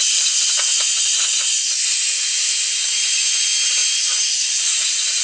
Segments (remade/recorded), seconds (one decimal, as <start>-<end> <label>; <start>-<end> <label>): 0.0-0.7 recorded; 0.7-1.2 remade; 1.2-5.2 recorded